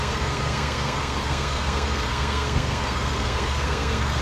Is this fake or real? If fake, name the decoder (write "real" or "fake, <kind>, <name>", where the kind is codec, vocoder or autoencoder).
fake, codec, SNAC